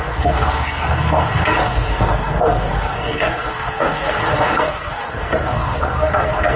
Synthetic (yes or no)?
yes